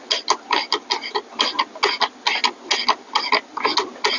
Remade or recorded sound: recorded